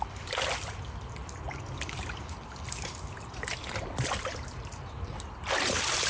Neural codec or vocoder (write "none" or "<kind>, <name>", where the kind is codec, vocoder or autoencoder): none